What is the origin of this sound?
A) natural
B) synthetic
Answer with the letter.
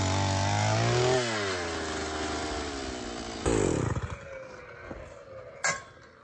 A